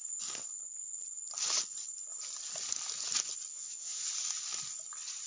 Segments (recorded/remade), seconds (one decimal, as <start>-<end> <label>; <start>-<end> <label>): 0.0-3.5 recorded; 3.5-4.0 remade; 4.0-5.3 recorded

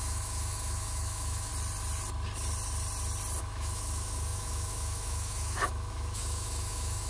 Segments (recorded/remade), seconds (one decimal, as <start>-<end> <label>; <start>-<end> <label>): 0.0-1.5 remade; 1.5-3.4 recorded; 3.4-7.1 remade